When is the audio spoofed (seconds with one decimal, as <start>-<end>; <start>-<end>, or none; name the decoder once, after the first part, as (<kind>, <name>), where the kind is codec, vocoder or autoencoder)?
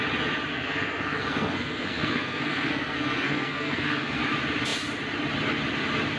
0.5-4.2 (codec, SNAC)